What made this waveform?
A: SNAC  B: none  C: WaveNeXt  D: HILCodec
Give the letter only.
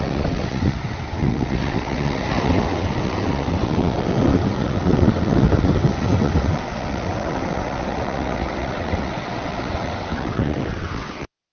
C